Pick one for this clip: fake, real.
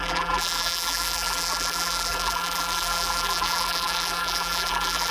fake